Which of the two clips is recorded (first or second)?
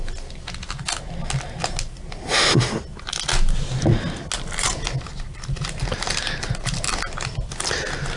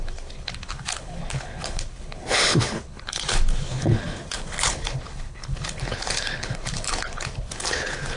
first